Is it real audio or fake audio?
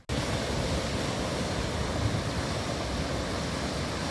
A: real